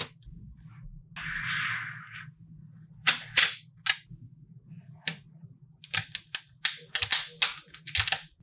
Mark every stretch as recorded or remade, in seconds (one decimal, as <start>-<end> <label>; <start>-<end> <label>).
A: 0.0-8.4 recorded